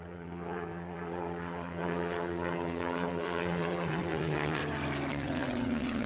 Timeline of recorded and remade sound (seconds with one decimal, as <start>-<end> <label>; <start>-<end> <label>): 0.0-4.6 remade; 4.6-5.1 recorded; 5.1-6.1 remade